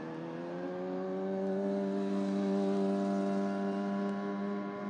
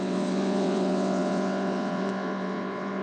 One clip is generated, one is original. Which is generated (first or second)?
second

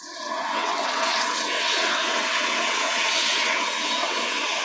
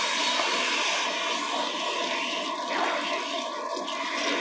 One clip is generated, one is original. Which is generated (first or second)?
first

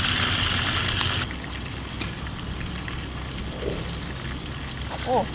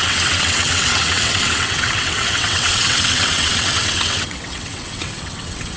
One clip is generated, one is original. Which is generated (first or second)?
second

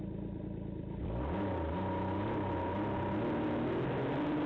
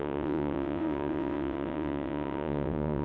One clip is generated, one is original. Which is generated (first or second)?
second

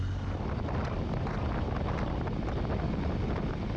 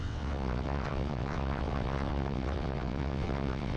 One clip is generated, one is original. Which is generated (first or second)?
second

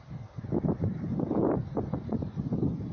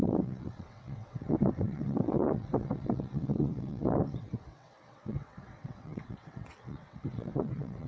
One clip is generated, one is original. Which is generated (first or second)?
second